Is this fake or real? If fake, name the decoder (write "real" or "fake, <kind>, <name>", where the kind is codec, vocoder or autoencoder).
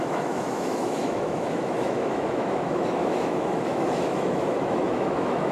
fake, autoencoder, DAC-VAE